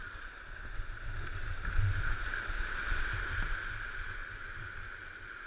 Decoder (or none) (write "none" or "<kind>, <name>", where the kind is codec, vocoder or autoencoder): none